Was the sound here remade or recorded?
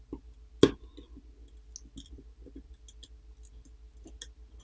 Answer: recorded